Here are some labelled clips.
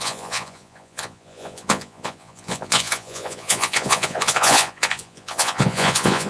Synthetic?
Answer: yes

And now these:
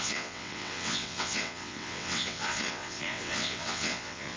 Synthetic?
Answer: yes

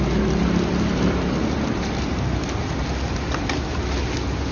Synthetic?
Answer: no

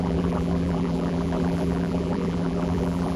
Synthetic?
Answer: yes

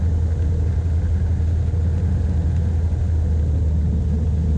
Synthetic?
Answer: no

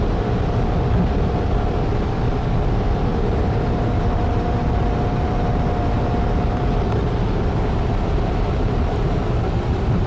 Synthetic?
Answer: yes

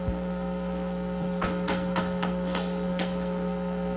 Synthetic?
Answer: yes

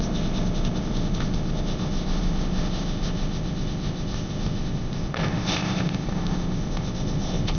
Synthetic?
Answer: yes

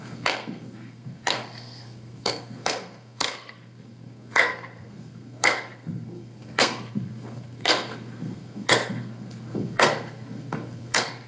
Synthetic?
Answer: yes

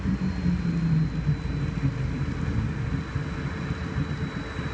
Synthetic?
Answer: no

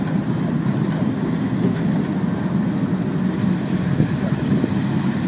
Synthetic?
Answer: no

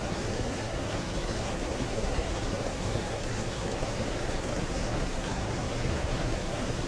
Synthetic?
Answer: yes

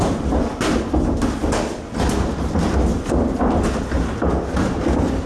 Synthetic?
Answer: no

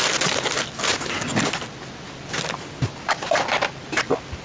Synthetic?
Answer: no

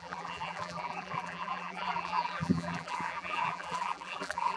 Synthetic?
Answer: yes